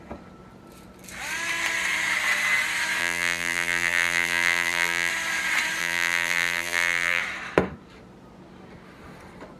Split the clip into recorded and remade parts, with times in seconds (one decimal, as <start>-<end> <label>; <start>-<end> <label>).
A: 0.0-3.0 recorded; 3.0-5.1 remade; 5.1-5.8 recorded; 5.8-7.2 remade; 7.2-9.6 recorded